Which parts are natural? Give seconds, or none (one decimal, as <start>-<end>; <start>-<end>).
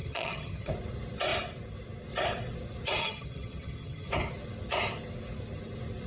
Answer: 0.7-3.0; 4.1-6.1